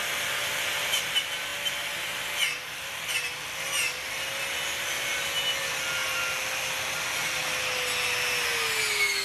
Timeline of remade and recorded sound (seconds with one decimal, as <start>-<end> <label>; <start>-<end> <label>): 0.0-9.2 recorded